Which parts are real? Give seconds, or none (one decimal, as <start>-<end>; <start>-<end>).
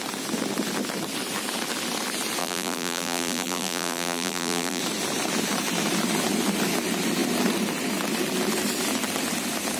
0.0-2.4; 4.8-9.8